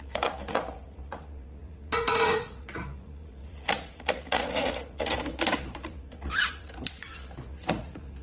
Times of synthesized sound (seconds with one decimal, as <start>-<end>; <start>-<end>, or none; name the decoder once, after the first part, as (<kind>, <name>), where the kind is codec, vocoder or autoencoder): 0.0-8.2 (vocoder, Vocos)